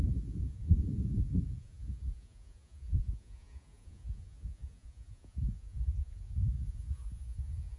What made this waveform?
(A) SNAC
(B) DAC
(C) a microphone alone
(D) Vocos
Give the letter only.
D